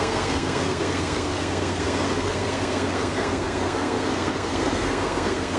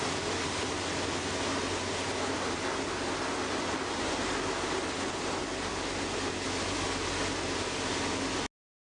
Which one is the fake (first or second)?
first